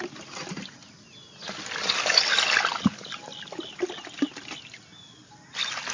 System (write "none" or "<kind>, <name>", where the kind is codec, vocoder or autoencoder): none